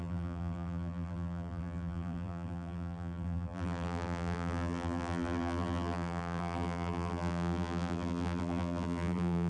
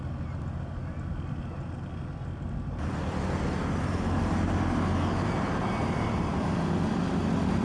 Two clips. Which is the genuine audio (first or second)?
second